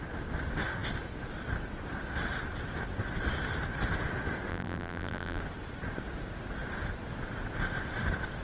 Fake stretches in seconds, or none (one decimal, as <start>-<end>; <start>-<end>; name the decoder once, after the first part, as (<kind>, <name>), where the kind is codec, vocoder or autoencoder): 4.5-5.4 (vocoder, BigVGAN v2)